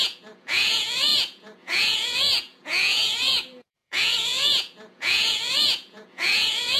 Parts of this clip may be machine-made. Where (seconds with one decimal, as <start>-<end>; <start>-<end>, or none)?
0.0-6.8

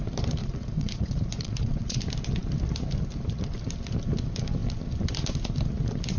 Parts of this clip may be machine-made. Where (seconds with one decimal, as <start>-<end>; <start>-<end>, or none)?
0.4-2.0

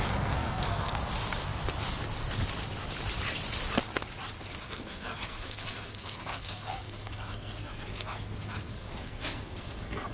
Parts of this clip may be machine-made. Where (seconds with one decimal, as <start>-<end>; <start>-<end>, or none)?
0.0-1.0; 4.6-10.1

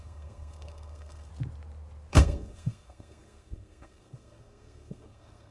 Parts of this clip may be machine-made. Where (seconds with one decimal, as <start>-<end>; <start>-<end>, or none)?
0.0-1.3; 2.1-5.5

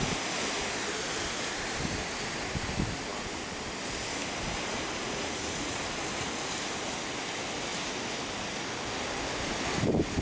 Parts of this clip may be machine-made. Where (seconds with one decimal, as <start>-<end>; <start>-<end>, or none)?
5.0-5.8

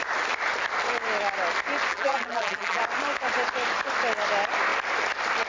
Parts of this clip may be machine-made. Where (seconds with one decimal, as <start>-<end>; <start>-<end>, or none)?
1.9-2.8

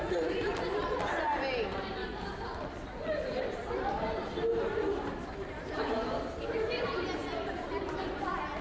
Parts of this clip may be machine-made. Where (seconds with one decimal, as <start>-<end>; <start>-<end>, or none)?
none